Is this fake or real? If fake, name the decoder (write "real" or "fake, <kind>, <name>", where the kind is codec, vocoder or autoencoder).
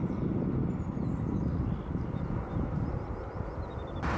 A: real